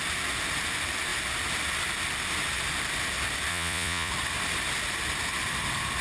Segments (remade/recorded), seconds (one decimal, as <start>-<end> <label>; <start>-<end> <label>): 0.0-3.5 recorded; 3.5-4.1 remade; 4.1-6.0 recorded